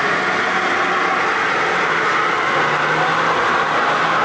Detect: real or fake real